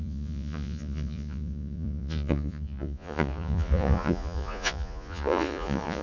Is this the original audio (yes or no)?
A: no